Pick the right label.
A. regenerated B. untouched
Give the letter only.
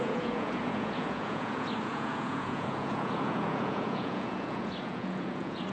A